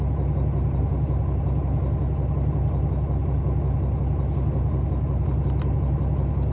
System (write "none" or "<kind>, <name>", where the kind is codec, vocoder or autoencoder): none